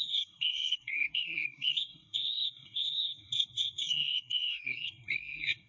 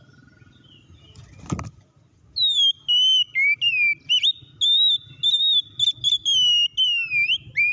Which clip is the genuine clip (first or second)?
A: second